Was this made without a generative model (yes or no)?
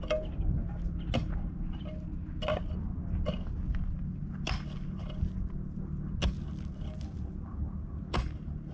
yes